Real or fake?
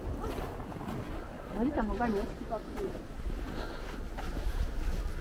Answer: real